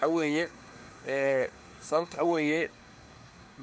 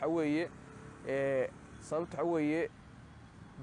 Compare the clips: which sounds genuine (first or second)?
second